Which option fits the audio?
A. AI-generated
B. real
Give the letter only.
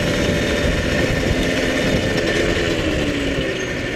B